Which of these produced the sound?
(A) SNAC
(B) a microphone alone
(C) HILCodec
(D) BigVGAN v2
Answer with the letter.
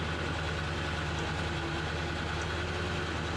B